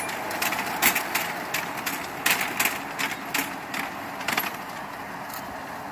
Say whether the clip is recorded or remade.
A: recorded